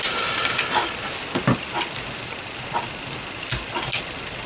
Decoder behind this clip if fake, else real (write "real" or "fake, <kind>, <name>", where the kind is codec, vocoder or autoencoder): real